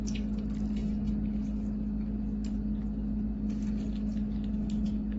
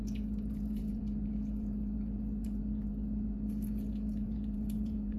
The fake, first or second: second